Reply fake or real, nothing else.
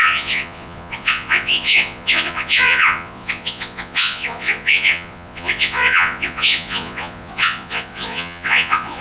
fake